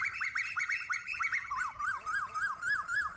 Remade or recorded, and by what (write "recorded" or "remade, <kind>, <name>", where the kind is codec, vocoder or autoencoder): remade, vocoder, BigVGAN v2